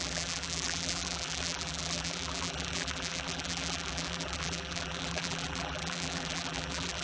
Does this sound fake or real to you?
fake